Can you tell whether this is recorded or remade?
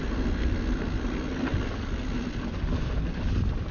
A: recorded